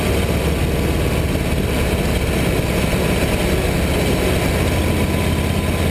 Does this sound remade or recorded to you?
recorded